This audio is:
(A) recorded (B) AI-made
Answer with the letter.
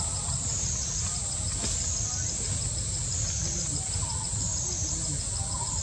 A